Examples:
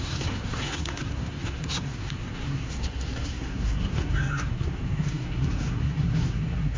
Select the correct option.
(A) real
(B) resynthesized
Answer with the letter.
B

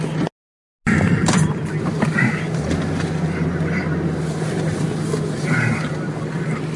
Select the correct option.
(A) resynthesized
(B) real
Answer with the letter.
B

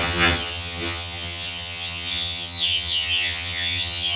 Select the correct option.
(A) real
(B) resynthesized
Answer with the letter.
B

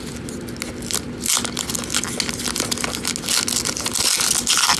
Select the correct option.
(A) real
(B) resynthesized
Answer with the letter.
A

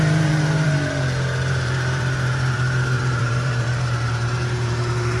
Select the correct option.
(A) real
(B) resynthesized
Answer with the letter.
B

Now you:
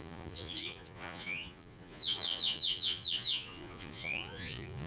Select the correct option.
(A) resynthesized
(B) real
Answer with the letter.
A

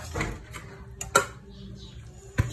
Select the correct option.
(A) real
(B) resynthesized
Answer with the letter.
A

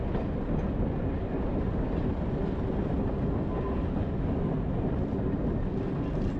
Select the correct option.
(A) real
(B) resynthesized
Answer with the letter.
A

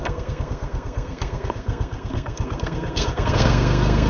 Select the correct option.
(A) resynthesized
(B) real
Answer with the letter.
A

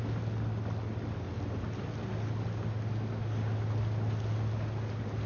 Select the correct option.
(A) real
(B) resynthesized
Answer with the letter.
A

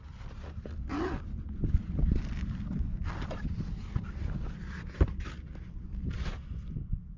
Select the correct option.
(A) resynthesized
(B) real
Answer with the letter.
B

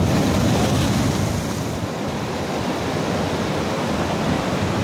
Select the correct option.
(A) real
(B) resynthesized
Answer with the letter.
A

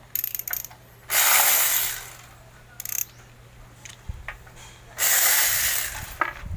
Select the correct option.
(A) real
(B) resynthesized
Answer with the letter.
A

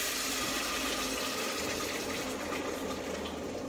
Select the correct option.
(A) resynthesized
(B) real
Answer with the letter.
B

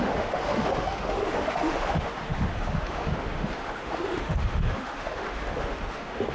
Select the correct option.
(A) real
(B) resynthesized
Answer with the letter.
B